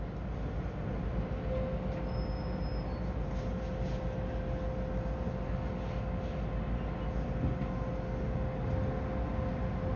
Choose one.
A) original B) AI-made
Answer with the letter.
A